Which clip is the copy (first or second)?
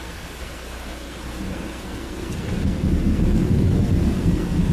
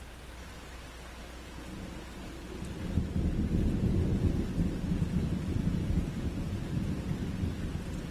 first